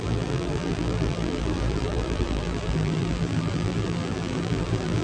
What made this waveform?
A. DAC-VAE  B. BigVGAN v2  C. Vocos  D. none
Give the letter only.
B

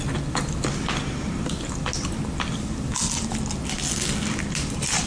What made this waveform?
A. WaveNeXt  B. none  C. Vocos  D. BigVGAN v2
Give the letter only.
B